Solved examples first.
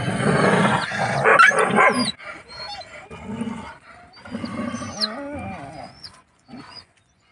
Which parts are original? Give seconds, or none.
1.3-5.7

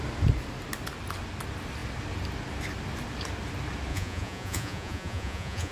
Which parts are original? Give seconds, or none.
0.0-3.9

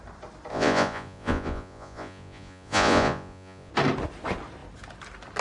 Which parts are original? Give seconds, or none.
0.0-0.5; 3.7-5.4

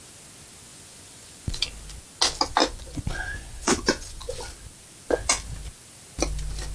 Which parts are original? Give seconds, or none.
0.0-0.7; 1.6-2.6; 4.4-6.7

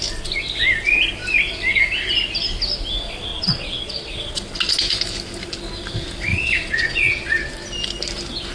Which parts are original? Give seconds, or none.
0.0-3.3; 4.5-6.3; 7.5-8.5